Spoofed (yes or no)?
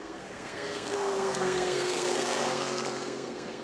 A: yes